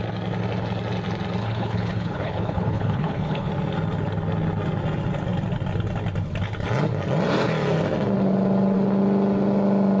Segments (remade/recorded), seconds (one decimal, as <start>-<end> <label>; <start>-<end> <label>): 0.0-1.4 recorded; 1.4-3.5 remade; 3.5-10.0 recorded

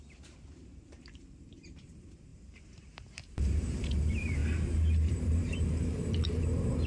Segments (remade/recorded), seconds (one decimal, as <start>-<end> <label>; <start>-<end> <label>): 0.0-4.4 remade; 4.4-5.0 recorded; 5.0-6.9 remade

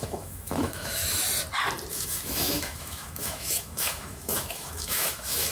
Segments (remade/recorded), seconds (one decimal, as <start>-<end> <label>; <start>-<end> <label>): 0.0-1.0 remade; 1.0-1.9 recorded; 1.9-5.5 remade

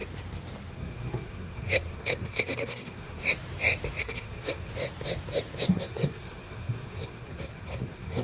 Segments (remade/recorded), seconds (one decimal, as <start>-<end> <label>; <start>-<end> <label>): 0.0-0.7 recorded; 0.7-3.2 remade; 3.2-4.0 recorded; 4.0-4.7 remade; 4.7-5.7 recorded; 5.7-8.2 remade

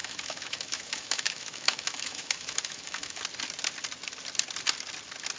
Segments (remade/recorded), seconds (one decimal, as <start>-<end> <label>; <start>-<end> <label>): 0.0-3.2 remade; 3.2-5.4 recorded